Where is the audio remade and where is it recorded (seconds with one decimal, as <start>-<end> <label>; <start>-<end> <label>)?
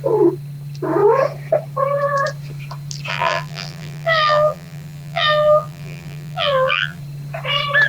0.0-3.1 recorded; 3.1-7.0 remade; 7.0-7.9 recorded